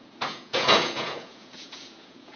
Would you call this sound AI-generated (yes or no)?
yes